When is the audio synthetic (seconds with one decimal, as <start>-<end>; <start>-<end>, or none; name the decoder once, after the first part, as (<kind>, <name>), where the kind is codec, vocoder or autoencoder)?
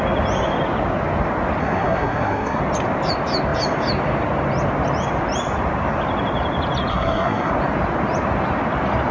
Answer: 1.6-2.6 (codec, SNAC); 6.9-7.5